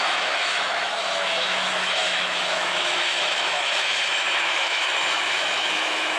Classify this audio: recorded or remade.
remade